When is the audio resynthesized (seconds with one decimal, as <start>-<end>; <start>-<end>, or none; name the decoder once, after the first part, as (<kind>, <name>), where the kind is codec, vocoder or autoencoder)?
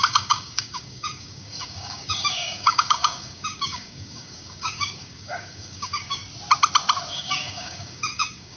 0.0-6.2 (codec, DAC); 7.1-8.6